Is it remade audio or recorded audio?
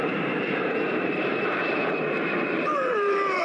remade